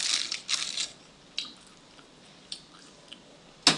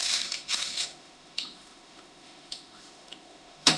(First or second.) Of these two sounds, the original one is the first